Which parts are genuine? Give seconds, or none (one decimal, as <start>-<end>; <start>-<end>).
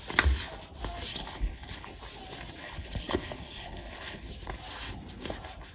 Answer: 0.0-1.1; 1.9-2.6; 4.3-5.7